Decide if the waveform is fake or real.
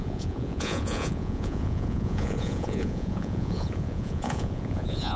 fake